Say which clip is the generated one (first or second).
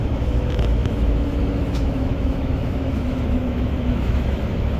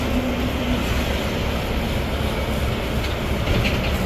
first